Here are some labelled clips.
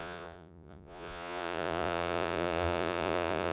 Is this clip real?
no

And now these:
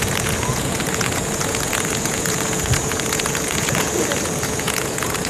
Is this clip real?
no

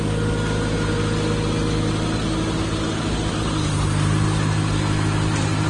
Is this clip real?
yes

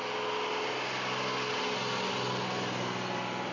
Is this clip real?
yes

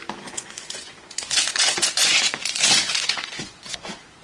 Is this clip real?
no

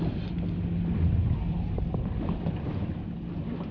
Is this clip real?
yes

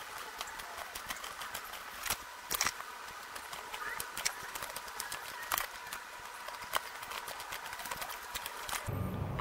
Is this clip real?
yes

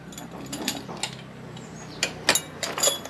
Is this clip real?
yes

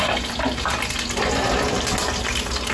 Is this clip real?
yes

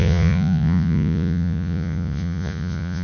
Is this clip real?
no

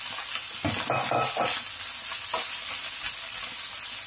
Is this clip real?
yes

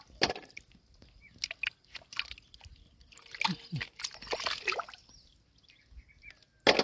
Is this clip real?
yes